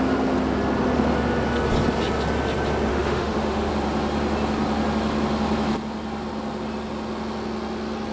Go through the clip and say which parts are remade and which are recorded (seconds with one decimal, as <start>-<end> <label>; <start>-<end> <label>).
0.0-2.9 recorded; 2.9-3.7 remade; 3.7-8.1 recorded